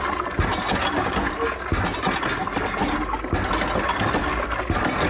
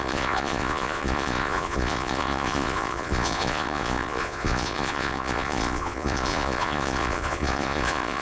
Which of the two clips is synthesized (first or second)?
second